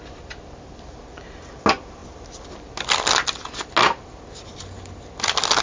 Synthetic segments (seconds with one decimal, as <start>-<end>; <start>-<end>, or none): none